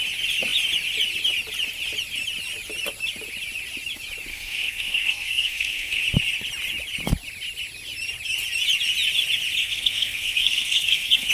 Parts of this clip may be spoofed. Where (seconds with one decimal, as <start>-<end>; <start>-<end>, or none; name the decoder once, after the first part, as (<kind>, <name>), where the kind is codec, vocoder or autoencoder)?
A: 4.3-6.0 (codec, SNAC); 9.6-11.3